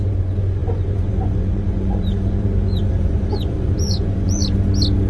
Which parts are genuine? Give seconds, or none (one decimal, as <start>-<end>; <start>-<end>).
4.4-5.1